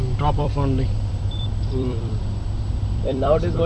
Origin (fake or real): fake